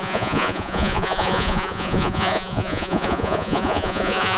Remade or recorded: remade